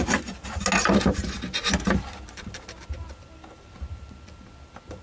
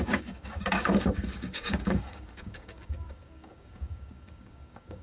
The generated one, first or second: second